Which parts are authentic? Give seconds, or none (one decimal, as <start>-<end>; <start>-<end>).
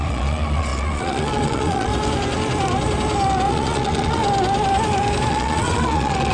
1.9-3.5; 4.2-5.3